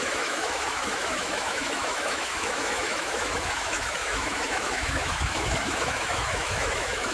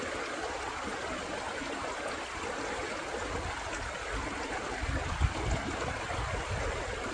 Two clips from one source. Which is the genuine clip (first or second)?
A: second